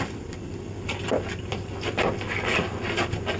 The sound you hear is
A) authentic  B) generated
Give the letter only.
A